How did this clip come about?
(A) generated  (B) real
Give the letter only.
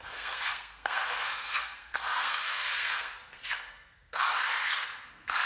A